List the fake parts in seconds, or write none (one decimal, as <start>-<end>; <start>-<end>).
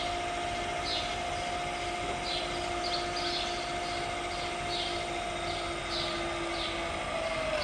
none